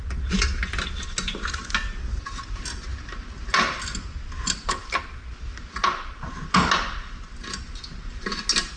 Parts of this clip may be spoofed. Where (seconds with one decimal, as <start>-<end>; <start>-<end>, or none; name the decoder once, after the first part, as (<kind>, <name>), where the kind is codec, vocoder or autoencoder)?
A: none